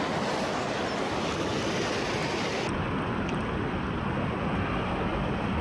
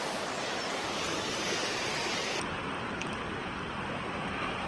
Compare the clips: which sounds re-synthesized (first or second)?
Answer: second